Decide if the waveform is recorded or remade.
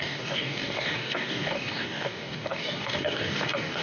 remade